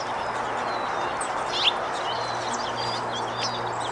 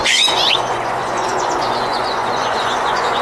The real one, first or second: first